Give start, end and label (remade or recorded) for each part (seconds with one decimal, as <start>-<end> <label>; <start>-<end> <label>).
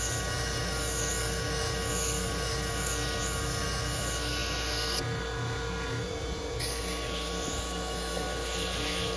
0.0-9.2 recorded